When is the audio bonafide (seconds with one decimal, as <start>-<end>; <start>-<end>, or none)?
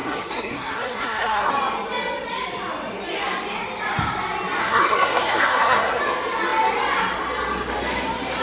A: 1.5-4.6; 6.0-8.4